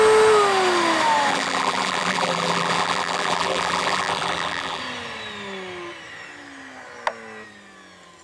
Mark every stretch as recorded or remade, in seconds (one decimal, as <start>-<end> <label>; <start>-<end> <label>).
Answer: 0.0-1.3 recorded; 1.3-4.8 remade; 4.8-8.2 recorded